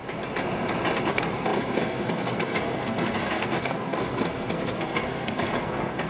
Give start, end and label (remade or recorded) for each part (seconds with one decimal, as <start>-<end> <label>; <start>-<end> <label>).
0.0-1.1 recorded; 1.1-6.1 remade